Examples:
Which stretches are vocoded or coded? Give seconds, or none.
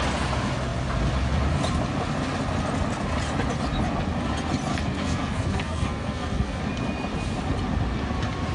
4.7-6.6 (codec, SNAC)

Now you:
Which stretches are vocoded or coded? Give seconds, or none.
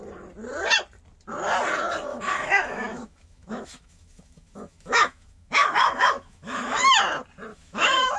2.1-7.0 (autoencoder, DAC-VAE); 7.5-8.2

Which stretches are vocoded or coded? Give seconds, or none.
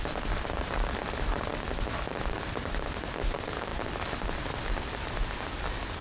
none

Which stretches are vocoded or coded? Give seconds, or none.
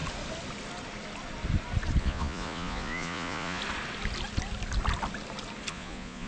2.0-3.6 (vocoder, Vocos); 5.7-6.3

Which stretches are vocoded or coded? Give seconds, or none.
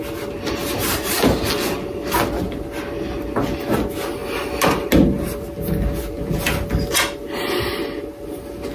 none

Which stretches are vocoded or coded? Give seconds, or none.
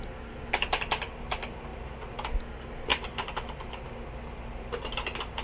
none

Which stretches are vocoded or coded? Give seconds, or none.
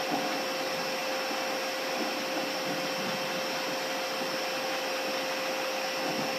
none